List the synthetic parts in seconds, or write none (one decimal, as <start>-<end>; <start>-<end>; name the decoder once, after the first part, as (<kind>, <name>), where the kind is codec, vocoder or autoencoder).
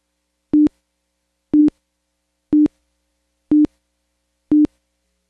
none